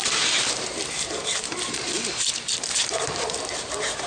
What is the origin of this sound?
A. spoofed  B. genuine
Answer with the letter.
A